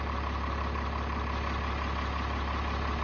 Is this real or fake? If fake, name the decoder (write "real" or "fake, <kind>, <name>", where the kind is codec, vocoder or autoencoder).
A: real